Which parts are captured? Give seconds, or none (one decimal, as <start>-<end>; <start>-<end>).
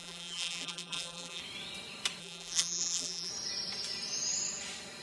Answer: 1.4-2.2; 3.3-5.0